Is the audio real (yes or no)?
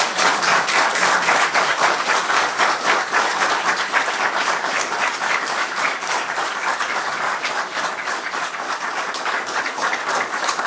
no